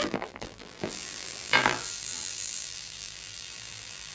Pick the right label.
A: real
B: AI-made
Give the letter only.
B